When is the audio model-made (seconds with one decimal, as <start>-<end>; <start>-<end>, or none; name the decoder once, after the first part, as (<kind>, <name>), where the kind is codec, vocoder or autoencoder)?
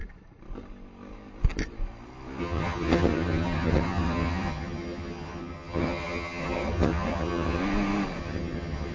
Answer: 2.4-7.6 (vocoder, HiFi-GAN); 8.2-8.9